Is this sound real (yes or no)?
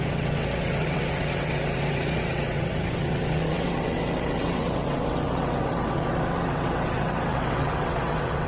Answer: no